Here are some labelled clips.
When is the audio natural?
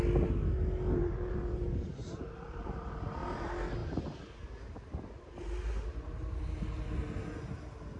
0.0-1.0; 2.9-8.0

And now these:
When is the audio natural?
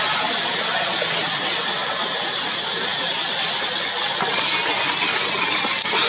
0.0-6.1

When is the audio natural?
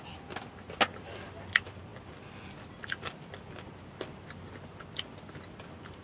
0.0-6.0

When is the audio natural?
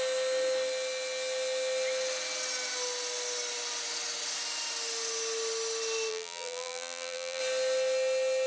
0.0-6.1; 7.4-8.5